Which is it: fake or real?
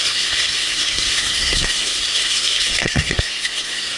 fake